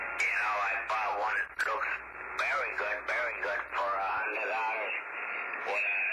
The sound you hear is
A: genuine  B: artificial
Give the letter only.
A